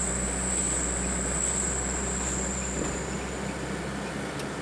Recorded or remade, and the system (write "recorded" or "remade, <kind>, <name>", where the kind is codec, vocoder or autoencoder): recorded